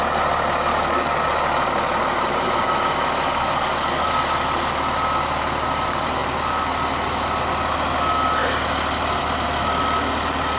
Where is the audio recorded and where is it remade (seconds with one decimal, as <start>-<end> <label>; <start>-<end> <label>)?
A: 0.0-0.7 recorded; 0.7-1.3 remade; 1.3-3.3 recorded; 3.3-4.1 remade; 4.1-10.6 recorded